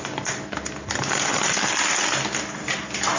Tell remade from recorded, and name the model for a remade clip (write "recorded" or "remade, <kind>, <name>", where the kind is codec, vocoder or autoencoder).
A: recorded